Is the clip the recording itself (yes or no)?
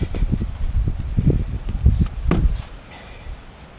yes